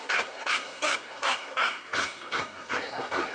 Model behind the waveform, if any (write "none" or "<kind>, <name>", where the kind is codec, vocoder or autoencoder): codec, SNAC